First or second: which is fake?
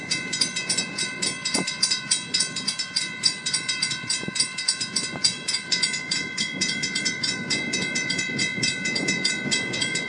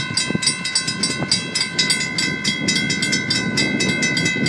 first